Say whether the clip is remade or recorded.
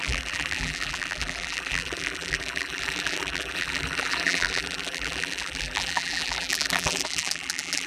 remade